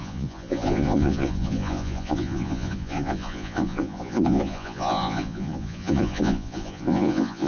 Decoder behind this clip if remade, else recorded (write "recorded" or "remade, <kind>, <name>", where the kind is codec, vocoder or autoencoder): remade, vocoder, Vocos